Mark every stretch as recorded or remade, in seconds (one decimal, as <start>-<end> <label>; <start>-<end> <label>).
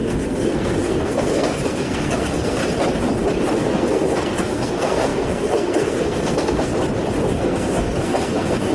0.0-2.6 remade; 2.6-3.5 recorded; 3.5-6.7 remade; 6.7-7.3 recorded; 7.3-8.7 remade